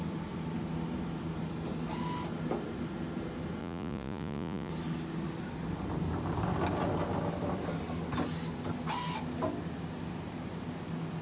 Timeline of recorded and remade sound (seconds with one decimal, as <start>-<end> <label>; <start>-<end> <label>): 0.0-3.6 recorded; 3.6-4.7 remade; 4.7-11.2 recorded